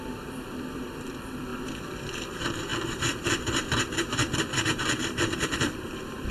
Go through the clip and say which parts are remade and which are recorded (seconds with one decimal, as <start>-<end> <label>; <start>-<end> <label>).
0.0-6.3 remade